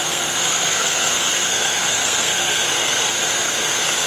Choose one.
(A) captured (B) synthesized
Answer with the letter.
B